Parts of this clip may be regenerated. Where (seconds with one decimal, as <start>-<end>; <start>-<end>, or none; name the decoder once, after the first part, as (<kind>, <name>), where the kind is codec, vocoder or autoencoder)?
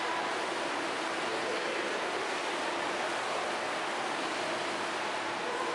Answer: none